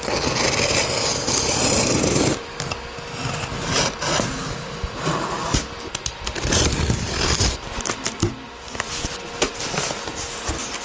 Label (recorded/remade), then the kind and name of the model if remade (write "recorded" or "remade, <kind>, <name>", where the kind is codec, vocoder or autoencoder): recorded